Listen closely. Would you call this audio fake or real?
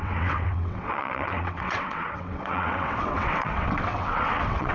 fake